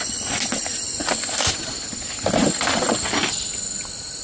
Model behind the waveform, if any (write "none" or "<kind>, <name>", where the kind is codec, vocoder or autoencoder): none